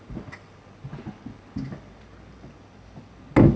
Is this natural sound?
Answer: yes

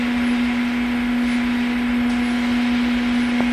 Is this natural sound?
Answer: yes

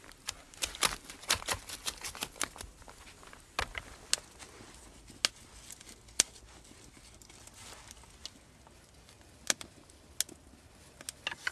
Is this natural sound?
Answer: yes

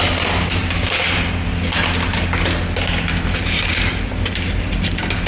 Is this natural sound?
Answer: no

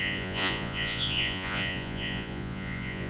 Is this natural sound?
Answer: no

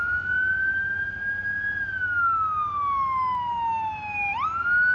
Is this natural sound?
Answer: yes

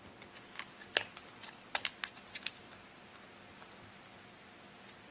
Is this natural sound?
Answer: yes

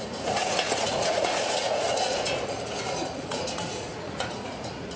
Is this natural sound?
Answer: no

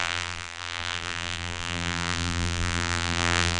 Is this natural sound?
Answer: no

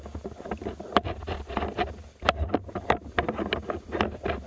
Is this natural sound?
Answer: yes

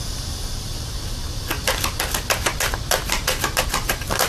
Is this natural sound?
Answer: no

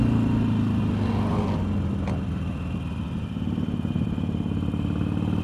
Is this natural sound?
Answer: yes